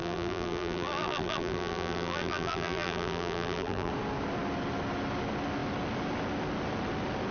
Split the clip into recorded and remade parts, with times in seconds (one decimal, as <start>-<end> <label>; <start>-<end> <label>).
0.0-3.9 remade; 3.9-7.3 recorded

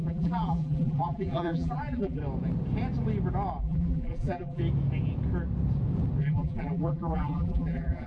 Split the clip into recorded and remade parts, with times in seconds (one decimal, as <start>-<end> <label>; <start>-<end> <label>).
0.0-2.2 remade; 2.2-3.6 recorded; 3.6-4.6 remade; 4.6-6.2 recorded; 6.2-8.1 remade

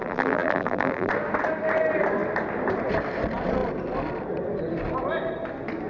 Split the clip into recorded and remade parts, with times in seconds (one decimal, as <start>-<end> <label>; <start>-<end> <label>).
0.0-1.1 remade; 1.1-5.9 recorded

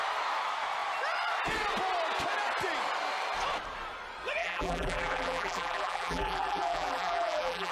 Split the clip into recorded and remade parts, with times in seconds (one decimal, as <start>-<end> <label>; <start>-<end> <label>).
0.0-4.4 recorded; 4.4-7.7 remade

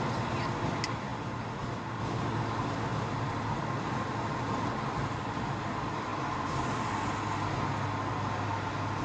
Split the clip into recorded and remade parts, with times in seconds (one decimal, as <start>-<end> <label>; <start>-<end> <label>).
0.0-6.1 recorded; 6.1-6.9 remade; 6.9-9.0 recorded

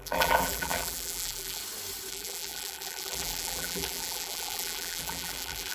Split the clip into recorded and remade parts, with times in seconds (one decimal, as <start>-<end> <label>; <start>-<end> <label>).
0.0-1.6 remade; 1.6-2.1 recorded; 2.1-5.7 remade

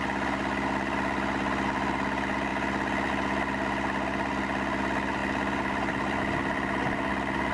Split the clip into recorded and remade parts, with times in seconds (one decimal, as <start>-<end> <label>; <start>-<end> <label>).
0.0-5.2 recorded; 5.2-6.2 remade; 6.2-7.5 recorded